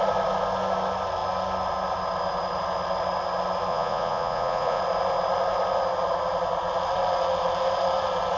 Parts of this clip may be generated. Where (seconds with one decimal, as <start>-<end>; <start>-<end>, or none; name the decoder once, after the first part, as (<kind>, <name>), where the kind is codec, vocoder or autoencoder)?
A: 3.7-4.8 (vocoder, Vocos)